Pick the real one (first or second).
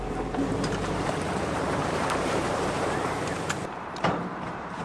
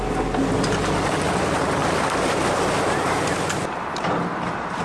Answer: second